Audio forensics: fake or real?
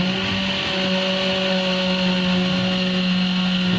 real